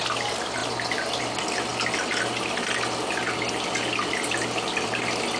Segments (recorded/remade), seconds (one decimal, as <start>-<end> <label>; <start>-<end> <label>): 0.0-0.6 remade; 0.6-1.2 recorded; 1.2-1.7 remade; 1.7-4.9 recorded; 4.9-5.4 remade